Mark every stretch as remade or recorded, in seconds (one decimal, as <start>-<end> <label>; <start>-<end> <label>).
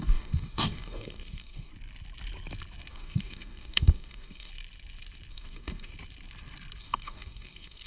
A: 0.0-1.7 remade; 1.7-2.9 recorded; 2.9-4.5 remade; 4.5-5.3 recorded; 5.3-5.9 remade; 5.9-6.8 recorded; 6.8-7.9 remade